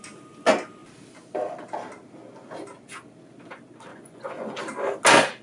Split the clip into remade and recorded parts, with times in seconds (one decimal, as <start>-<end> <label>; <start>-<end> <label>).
0.0-3.9 recorded; 3.9-4.6 remade; 4.6-5.4 recorded